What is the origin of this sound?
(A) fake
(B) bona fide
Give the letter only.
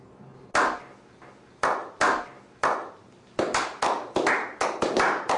B